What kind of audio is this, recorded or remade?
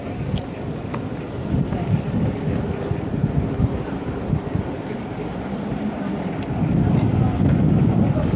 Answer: recorded